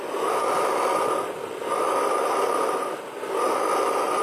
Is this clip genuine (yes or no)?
yes